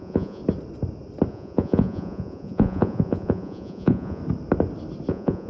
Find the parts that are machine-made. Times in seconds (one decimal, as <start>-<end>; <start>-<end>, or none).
0.0-0.4; 1.3-4.2; 5.1-5.5

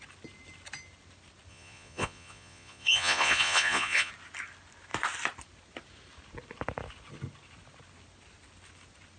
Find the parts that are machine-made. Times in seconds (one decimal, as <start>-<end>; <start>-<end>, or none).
1.5-4.1

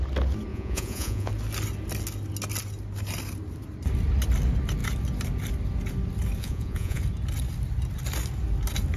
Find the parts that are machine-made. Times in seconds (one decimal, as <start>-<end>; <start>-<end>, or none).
0.5-1.3; 6.4-7.0

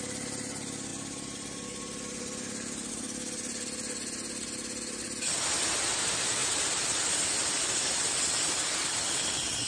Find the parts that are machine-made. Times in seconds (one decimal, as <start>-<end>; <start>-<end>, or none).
none

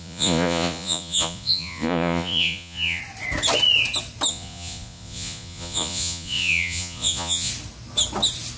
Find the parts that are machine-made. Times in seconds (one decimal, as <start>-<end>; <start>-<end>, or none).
0.0-3.0; 4.3-7.5

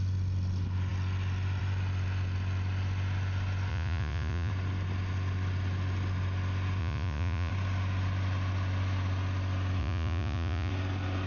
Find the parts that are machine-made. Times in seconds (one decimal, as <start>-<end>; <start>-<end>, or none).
3.7-4.5; 6.8-7.5; 9.8-10.7